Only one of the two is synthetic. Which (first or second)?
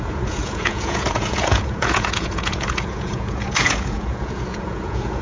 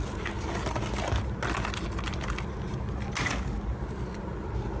first